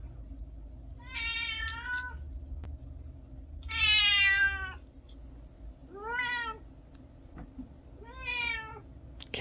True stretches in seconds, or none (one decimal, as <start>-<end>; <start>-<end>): 0.0-9.4